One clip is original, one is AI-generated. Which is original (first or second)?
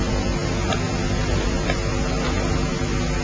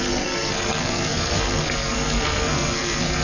first